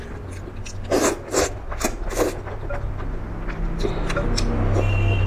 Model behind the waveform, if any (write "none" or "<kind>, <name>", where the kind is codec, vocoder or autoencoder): none